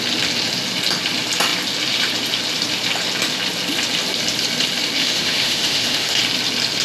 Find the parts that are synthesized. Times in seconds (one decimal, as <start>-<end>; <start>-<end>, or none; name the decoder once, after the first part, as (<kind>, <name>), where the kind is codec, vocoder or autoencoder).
5.0-6.2 (autoencoder, DAC-VAE)